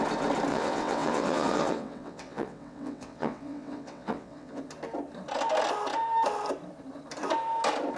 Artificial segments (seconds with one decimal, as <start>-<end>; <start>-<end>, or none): 0.5-4.6